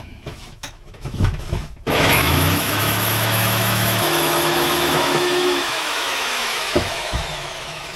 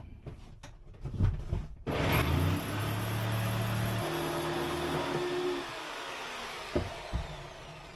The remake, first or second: first